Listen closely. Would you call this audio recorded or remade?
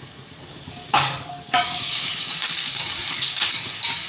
remade